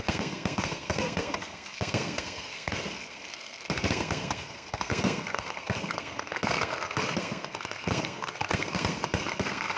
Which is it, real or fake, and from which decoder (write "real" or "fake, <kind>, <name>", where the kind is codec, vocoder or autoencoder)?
fake, codec, SNAC